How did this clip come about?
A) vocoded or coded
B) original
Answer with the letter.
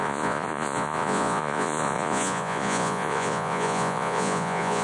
A